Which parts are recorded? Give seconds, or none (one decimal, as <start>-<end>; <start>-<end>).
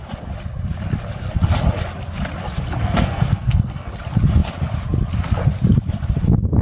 0.0-2.8; 3.9-6.6